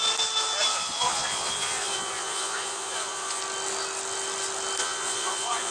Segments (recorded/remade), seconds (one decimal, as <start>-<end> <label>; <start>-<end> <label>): 0.0-0.7 recorded; 0.7-3.4 remade; 3.4-4.8 recorded; 4.8-5.7 remade